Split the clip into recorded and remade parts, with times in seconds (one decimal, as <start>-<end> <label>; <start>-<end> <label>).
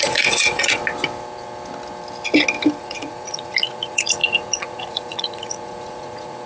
0.0-0.8 remade; 0.8-2.8 recorded; 2.8-6.5 remade